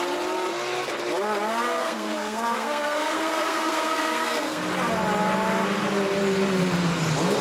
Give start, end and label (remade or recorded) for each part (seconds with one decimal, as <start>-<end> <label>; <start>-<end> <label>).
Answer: 0.0-1.8 recorded; 1.8-4.6 remade; 4.6-7.4 recorded